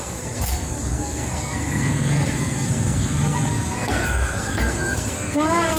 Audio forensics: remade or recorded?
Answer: remade